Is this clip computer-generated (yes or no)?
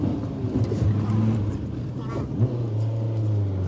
no